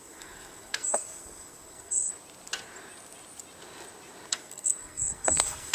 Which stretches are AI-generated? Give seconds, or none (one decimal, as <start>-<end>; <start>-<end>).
0.0-2.1; 4.3-5.7